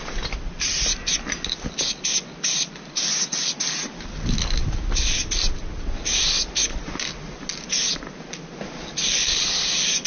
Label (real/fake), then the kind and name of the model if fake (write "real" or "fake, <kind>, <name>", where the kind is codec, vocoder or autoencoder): real